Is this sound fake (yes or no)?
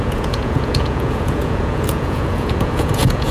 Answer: yes